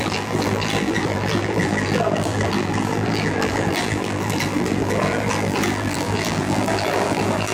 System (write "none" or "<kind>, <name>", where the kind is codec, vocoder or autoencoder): vocoder, BigVGAN v2